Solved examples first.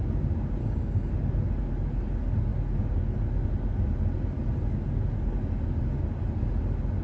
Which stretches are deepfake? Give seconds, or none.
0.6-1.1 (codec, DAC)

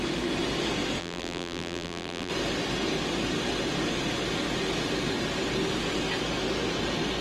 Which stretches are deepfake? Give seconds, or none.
1.0-2.3 (vocoder, BigVGAN v2)

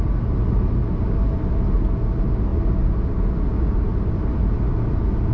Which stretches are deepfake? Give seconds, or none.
none

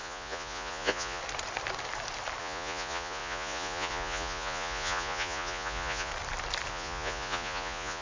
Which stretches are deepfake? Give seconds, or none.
0.0-1.2 (vocoder, Vocos); 2.4-6.1; 6.7-8.0

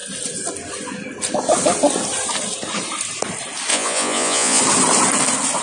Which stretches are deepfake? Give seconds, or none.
3.7-4.6 (vocoder, Vocos)

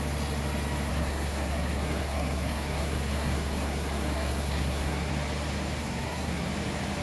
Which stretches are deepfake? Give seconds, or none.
0.9-5.1 (codec, SNAC); 5.8-6.5